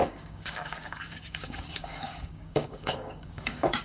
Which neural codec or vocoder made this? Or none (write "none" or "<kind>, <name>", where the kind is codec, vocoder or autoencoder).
codec, DAC